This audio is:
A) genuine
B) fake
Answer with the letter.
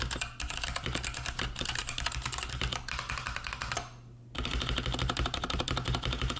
A